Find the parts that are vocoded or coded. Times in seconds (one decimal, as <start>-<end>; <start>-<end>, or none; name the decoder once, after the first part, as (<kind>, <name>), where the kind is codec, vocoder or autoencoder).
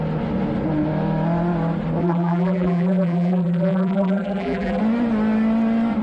2.0-4.8 (vocoder, BigVGAN v2)